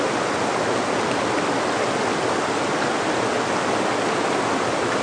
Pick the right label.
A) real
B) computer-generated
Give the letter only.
A